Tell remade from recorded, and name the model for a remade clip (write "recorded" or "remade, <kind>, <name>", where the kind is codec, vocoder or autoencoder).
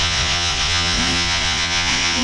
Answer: remade, vocoder, Vocos